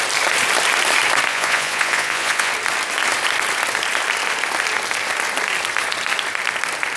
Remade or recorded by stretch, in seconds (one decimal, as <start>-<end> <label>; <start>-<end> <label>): 0.0-1.3 recorded; 1.3-2.5 remade; 2.5-7.0 recorded

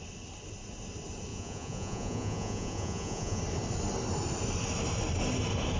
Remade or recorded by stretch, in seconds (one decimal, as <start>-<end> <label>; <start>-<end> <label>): 0.0-1.3 recorded; 1.3-3.4 remade; 3.4-5.8 recorded

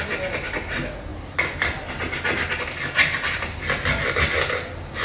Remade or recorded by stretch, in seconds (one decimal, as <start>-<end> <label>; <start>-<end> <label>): 0.0-5.0 recorded